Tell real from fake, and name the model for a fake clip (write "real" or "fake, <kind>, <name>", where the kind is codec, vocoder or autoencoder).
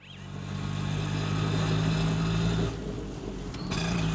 real